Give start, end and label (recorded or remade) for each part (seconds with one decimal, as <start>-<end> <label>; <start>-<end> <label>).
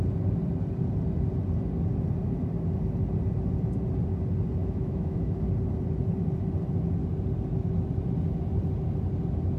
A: 0.0-4.6 recorded; 4.6-5.4 remade; 5.4-9.6 recorded